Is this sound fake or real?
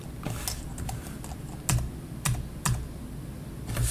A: real